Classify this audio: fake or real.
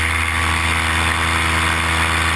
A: real